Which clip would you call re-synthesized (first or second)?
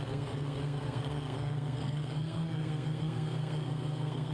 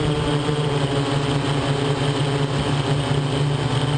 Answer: first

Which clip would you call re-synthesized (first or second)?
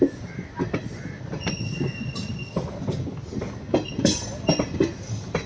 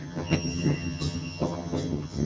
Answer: second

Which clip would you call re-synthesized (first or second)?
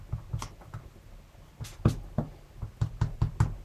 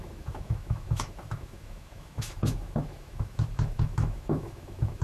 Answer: second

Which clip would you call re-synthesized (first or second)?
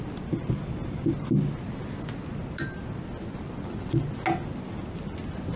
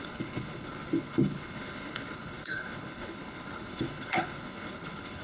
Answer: second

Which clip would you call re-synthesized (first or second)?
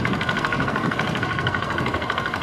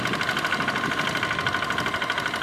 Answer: first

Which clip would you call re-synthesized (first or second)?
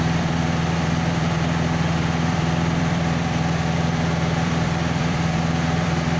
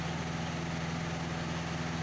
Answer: first